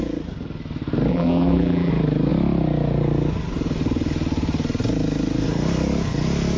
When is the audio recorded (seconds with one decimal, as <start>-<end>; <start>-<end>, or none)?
0.0-1.1; 1.9-6.6